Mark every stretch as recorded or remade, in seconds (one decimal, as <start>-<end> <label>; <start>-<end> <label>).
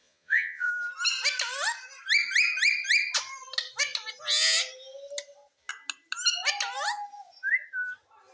0.0-0.7 remade; 0.7-8.3 recorded